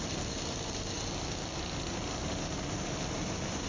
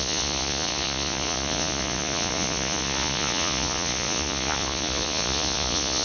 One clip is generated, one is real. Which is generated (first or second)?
second